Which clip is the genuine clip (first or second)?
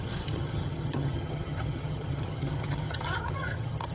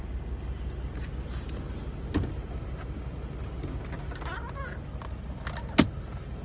second